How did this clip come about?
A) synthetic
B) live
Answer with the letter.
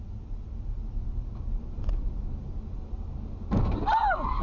B